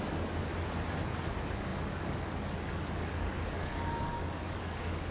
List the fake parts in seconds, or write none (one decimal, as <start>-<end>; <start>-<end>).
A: 0.0-0.5; 1.0-5.1